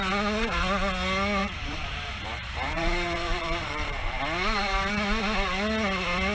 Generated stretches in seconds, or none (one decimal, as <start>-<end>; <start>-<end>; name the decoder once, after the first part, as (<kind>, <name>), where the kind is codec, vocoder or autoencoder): 1.4-4.2 (vocoder, BigVGAN v2)